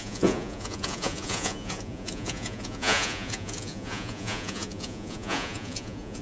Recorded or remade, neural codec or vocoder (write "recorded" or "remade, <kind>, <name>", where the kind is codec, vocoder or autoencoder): remade, vocoder, Vocos